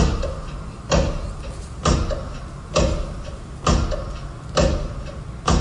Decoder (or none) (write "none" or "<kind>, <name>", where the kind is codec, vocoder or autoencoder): none